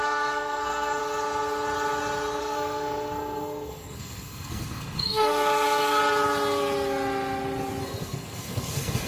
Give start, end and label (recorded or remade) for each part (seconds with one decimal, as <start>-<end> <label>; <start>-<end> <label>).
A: 0.0-1.0 remade; 1.0-2.4 recorded; 2.4-6.0 remade; 6.0-7.8 recorded; 7.8-9.1 remade